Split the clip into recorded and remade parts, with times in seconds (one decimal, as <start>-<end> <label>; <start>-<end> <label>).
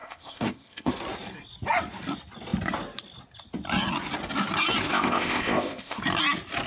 0.0-0.9 remade; 0.9-4.9 recorded; 4.9-6.0 remade; 6.0-6.7 recorded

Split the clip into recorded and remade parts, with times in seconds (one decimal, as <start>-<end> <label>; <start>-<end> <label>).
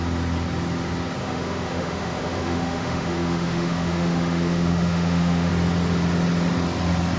0.0-1.2 recorded; 1.2-5.5 remade; 5.5-7.2 recorded